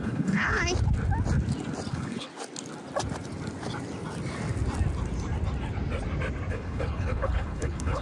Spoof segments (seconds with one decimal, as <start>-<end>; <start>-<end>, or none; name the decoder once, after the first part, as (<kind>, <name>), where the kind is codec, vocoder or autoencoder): 0.0-0.6 (codec, HILCodec); 1.9-2.3; 6.5-8.0